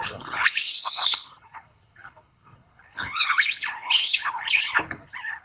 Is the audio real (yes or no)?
no